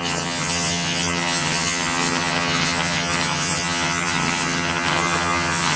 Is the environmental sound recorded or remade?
remade